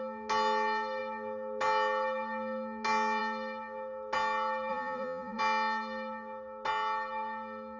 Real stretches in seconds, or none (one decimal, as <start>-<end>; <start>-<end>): 0.0-4.7; 5.4-7.8